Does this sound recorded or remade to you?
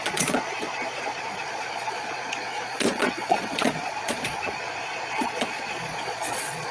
remade